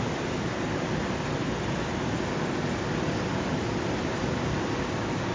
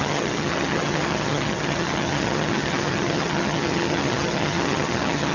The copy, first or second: second